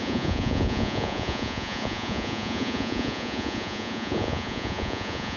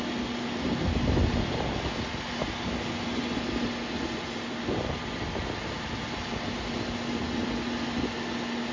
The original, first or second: second